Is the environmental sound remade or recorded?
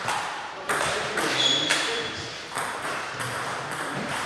remade